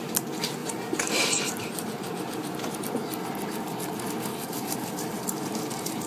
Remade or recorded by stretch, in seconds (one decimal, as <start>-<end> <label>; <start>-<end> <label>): 0.0-0.6 recorded; 0.6-2.8 remade; 2.8-4.3 recorded; 4.3-6.1 remade